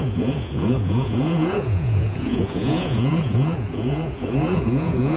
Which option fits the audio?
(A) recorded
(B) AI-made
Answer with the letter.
B